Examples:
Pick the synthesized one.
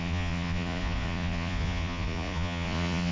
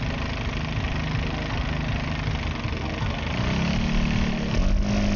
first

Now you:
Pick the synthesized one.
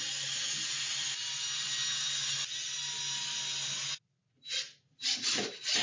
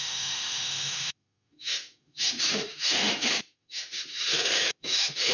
second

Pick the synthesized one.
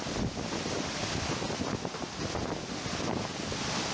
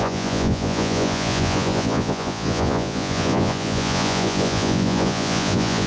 second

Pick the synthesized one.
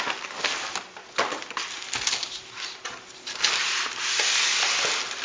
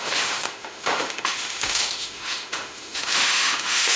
second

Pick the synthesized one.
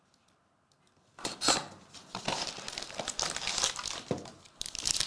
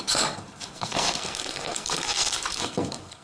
second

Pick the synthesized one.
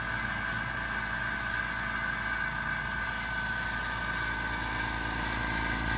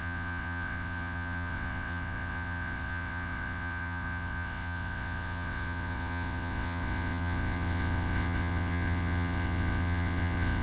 second